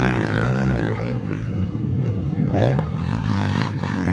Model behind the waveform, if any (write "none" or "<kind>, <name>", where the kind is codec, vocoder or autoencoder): codec, SNAC